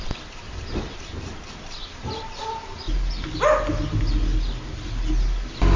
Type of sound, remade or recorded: recorded